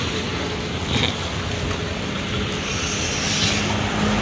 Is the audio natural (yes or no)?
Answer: yes